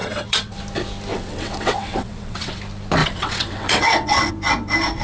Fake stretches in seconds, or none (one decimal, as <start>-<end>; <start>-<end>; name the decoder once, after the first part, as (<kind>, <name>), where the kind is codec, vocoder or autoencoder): 0.0-0.6 (vocoder, WaveNeXt); 1.1-2.6; 3.0-4.3